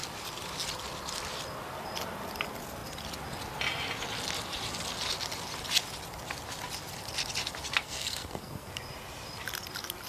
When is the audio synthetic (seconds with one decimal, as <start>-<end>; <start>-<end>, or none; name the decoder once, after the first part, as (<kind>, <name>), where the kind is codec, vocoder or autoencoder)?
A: 7.6-8.7 (codec, SNAC)